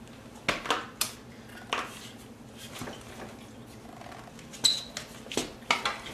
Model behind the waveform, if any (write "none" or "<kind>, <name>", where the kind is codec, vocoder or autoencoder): none